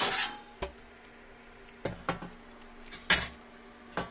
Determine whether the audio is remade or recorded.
recorded